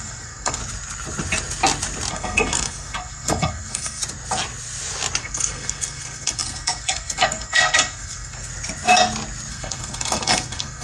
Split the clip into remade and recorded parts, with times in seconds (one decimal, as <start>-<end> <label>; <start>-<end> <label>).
0.0-0.6 remade; 0.6-2.1 recorded; 2.1-4.0 remade; 4.0-5.2 recorded; 5.2-8.5 remade; 8.5-9.5 recorded; 9.5-10.8 remade